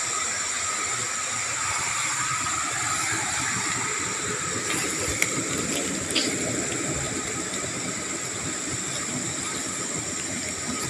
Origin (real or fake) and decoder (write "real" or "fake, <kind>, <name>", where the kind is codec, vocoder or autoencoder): real